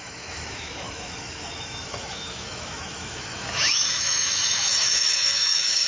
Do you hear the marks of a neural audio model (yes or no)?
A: yes